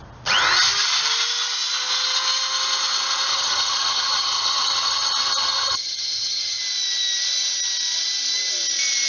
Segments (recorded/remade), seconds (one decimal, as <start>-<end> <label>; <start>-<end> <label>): 0.0-3.3 recorded; 3.3-6.6 remade; 6.6-9.1 recorded